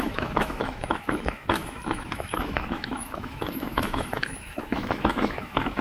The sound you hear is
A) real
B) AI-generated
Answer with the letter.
B